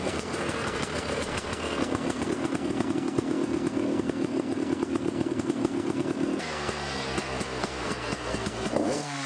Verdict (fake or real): fake